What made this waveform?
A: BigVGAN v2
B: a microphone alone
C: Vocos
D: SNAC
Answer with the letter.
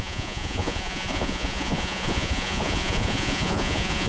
C